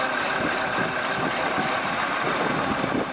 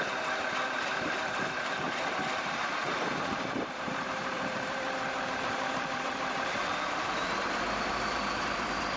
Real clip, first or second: first